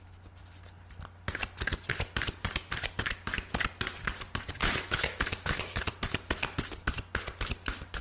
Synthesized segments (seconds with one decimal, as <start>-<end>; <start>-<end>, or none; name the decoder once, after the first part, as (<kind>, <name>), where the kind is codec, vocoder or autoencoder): 4.6-5.8 (autoencoder, DAC-VAE)

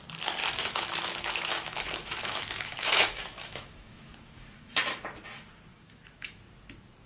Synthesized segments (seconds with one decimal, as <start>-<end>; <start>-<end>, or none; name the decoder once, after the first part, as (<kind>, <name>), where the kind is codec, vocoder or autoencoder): 0.4-4.7 (autoencoder, DAC-VAE); 5.7-6.4

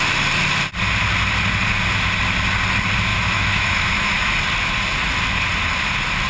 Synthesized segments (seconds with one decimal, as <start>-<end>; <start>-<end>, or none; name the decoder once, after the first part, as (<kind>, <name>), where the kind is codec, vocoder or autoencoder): 3.1-4.3 (autoencoder, DAC-VAE)

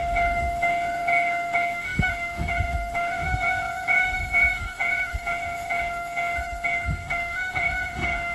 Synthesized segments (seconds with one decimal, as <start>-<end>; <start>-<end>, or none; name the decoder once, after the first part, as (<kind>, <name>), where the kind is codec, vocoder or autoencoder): 0.0-8.3 (autoencoder, DAC-VAE)

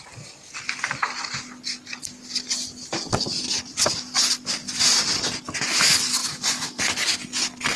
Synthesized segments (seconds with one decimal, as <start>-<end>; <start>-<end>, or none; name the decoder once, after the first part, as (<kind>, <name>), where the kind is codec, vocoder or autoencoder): 6.2-6.8 (autoencoder, DAC-VAE)

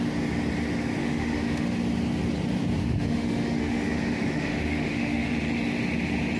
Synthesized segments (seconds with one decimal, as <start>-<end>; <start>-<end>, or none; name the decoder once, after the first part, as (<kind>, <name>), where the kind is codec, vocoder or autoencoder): 1.0-1.8 (autoencoder, DAC-VAE); 2.8-5.3

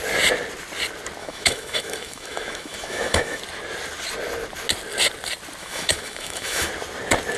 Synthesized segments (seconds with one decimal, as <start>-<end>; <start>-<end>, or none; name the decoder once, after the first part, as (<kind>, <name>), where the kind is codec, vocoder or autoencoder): 1.2-3.4 (autoencoder, DAC-VAE); 5.6-6.7

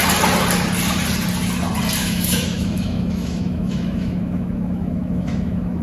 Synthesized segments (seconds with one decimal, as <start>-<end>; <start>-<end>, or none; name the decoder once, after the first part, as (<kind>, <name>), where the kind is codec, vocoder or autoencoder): 2.0-5.8 (autoencoder, DAC-VAE)